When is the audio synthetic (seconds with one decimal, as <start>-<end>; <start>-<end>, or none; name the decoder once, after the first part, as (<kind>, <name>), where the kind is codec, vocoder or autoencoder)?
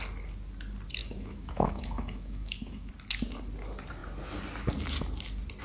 1.0-2.9 (autoencoder, DAC-VAE)